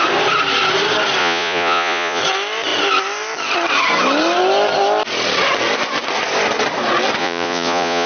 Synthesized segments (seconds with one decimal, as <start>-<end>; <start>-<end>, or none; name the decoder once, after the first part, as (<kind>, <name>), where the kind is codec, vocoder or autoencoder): 1.2-2.2 (vocoder, Vocos); 7.2-8.1